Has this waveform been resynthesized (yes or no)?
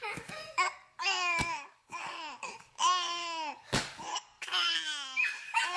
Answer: yes